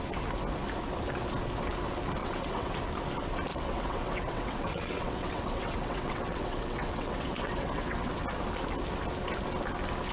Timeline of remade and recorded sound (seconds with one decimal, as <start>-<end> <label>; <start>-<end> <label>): 0.0-2.2 recorded; 2.2-2.8 remade; 2.8-3.5 recorded; 3.5-8.1 remade; 8.1-10.1 recorded